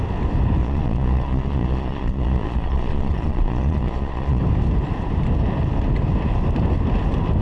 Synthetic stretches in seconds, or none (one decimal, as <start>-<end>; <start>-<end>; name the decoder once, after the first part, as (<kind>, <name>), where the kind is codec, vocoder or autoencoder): 0.6-4.4 (vocoder, Vocos)